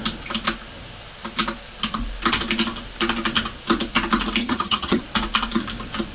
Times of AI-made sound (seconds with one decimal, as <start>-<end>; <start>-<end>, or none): 4.4-5.0